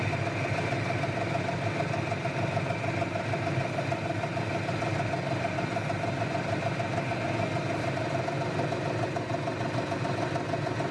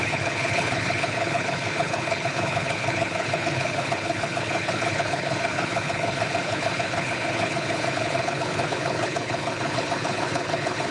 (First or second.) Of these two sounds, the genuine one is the first